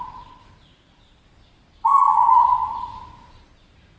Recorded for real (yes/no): no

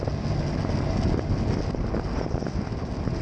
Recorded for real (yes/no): yes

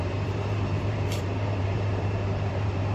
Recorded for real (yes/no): no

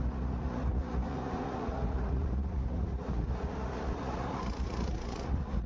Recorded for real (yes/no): no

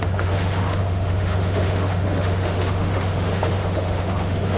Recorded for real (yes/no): no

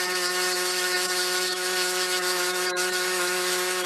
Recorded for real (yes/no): no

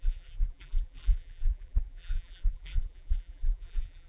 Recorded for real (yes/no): no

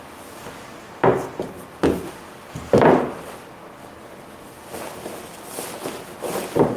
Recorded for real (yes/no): yes